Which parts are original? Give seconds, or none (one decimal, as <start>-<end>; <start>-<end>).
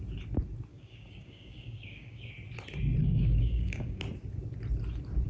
0.0-0.7; 2.3-3.0; 4.0-5.3